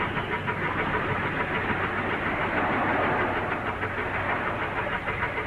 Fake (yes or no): no